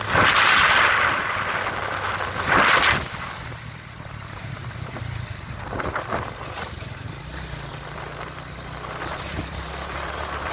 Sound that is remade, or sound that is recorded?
remade